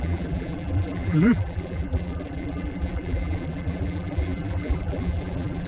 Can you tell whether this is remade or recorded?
remade